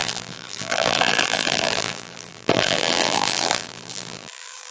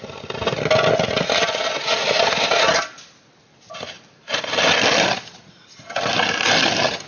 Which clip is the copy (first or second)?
first